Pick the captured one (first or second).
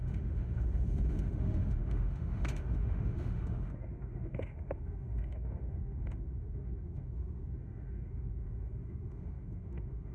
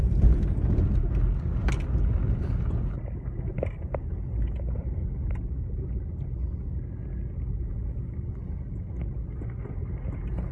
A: second